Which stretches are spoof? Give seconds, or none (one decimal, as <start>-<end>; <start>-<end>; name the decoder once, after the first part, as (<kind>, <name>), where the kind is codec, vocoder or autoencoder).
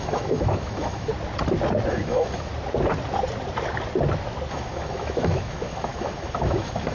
0.0-1.1 (autoencoder, DAC-VAE); 1.9-2.5; 4.5-6.9